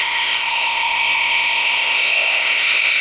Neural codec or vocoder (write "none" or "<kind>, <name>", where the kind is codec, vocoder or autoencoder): codec, ZipCodec